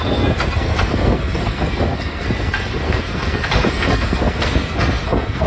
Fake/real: fake